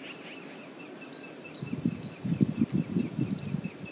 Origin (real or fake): real